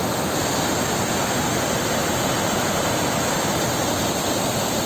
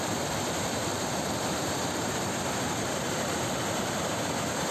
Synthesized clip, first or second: second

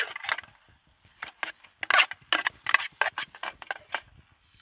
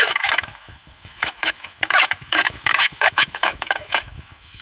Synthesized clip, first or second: second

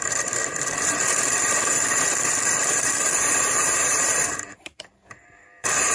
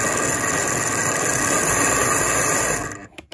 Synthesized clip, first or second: first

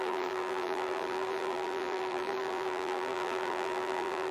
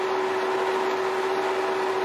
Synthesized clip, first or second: first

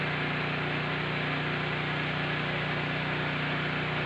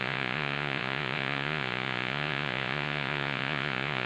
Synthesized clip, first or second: second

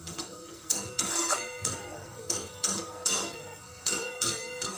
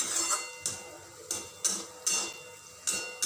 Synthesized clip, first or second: first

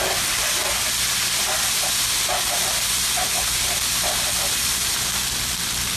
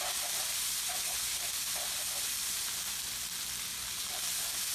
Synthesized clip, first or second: first